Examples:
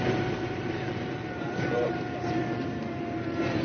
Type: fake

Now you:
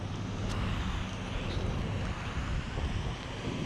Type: real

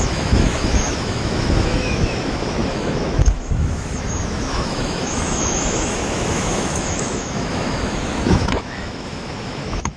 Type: fake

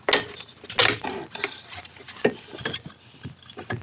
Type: real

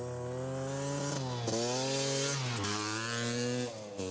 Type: real